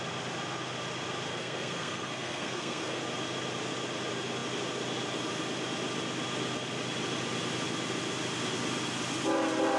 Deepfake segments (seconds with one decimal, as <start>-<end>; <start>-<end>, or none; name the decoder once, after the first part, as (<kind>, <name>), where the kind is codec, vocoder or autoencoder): 1.3-3.0 (codec, SNAC)